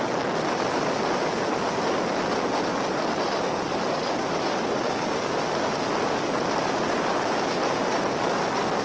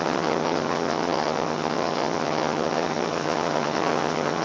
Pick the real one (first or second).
first